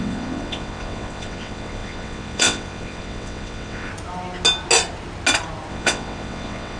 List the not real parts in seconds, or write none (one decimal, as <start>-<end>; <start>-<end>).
0.0-3.9; 5.7-6.8